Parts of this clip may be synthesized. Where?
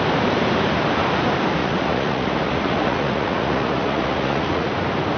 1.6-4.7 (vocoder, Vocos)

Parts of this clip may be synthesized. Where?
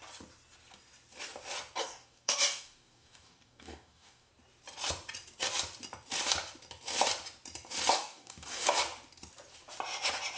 1.8-4.3 (codec, DAC); 7.9-8.8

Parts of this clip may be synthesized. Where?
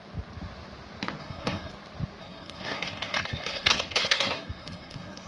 1.2-1.7 (codec, SNAC); 2.2-5.3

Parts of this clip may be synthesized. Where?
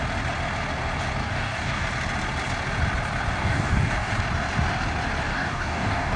1.2-1.9 (codec, DAC); 3.4-4.1; 5.3-6.2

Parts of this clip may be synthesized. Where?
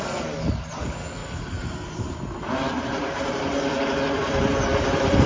1.2-3.6 (vocoder, BigVGAN v2); 4.2-5.3